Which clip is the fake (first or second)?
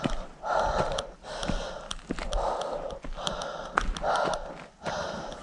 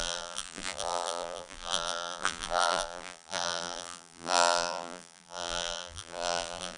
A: second